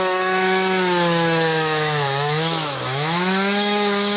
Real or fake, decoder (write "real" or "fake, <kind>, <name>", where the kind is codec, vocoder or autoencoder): fake, autoencoder, DAC-VAE